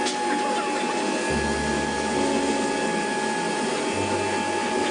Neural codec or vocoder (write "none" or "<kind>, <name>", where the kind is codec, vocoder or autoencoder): none